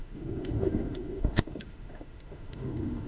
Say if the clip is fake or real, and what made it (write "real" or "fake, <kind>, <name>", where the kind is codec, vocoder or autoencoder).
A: fake, autoencoder, DAC-VAE